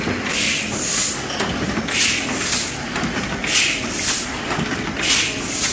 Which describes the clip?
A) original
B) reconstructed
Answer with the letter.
A